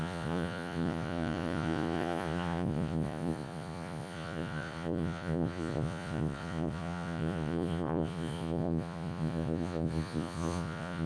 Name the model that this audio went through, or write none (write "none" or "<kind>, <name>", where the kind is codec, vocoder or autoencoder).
vocoder, Vocos